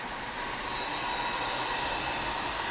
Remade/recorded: recorded